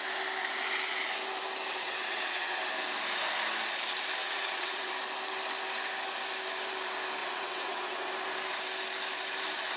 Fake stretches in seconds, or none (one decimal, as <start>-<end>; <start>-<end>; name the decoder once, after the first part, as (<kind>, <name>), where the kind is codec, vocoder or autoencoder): 1.8-2.6 (vocoder, WaveNeXt); 4.2-4.9; 7.2-8.1